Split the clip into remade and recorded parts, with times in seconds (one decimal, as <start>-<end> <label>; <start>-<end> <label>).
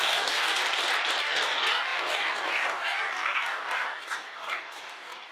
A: 0.0-0.6 remade; 0.6-1.2 recorded; 1.2-5.3 remade